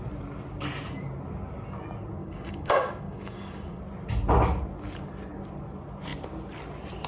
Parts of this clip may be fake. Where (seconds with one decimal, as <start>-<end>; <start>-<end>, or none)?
2.2-3.8